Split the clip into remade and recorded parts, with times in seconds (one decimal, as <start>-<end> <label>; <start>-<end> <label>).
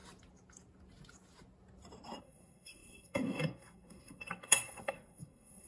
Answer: 0.0-2.2 recorded; 2.2-5.7 remade